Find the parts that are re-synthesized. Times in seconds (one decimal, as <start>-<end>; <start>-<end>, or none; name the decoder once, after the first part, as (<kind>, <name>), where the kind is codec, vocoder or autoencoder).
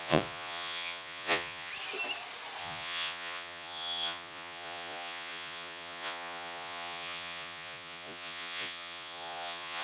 0.0-1.7 (vocoder, Vocos); 2.6-9.8